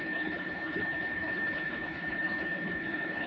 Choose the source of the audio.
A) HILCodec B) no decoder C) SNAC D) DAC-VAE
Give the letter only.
A